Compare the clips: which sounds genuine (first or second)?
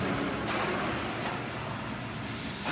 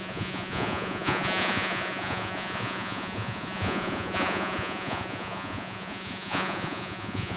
first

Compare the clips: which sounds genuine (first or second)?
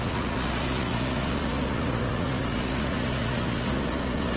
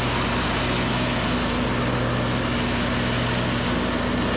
second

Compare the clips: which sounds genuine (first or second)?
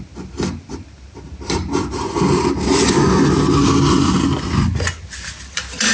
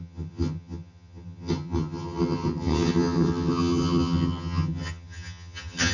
first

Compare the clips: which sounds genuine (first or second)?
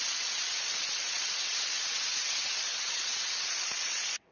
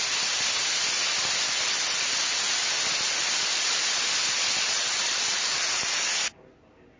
second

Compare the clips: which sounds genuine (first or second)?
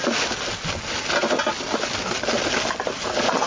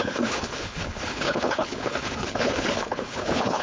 first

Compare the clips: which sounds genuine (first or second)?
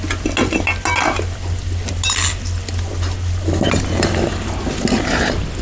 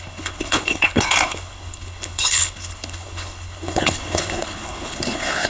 first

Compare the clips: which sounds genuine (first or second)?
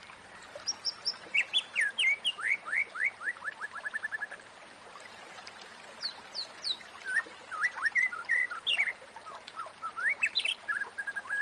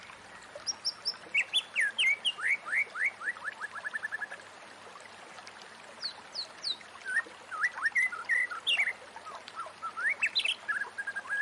second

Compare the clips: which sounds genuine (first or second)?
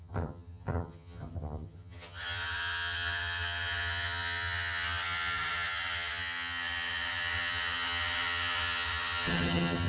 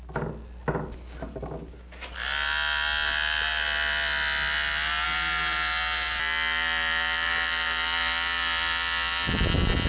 second